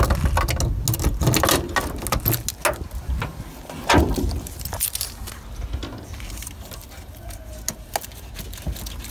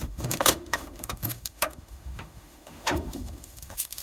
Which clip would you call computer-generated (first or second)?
second